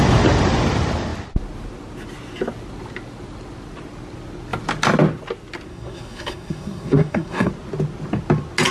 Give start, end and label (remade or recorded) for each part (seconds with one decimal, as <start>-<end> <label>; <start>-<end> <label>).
0.0-5.7 recorded; 5.7-7.5 remade; 7.5-8.7 recorded